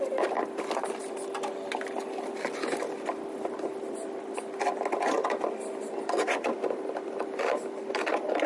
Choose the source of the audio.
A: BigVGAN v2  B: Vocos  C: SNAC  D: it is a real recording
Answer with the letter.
D